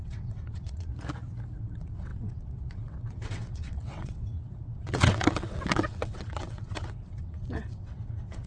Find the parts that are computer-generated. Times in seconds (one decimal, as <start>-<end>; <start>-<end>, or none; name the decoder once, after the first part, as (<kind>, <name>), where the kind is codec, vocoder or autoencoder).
0.0-0.9 (vocoder, WaveNeXt); 1.6-8.5